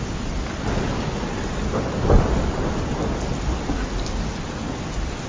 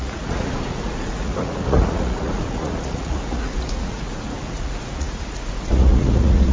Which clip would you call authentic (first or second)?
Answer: first